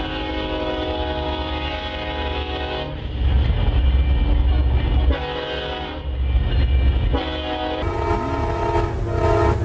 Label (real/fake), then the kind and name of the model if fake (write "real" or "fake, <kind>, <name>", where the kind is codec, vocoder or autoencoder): real